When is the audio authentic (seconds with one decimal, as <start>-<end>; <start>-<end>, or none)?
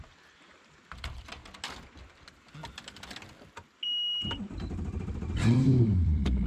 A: 1.4-4.4